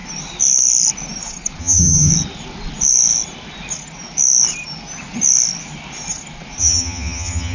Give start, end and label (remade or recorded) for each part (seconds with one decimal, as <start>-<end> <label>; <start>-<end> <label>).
0.0-1.6 recorded; 1.6-2.1 remade; 2.1-6.6 recorded; 6.6-7.5 remade